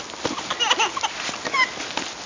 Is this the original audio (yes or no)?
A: yes